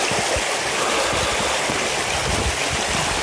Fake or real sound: real